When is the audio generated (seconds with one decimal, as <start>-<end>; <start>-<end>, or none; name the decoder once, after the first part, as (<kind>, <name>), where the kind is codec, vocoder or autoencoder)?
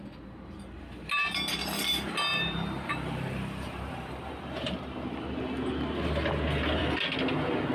2.3-4.7 (vocoder, BigVGAN v2)